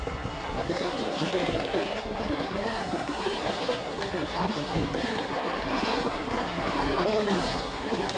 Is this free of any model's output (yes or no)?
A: no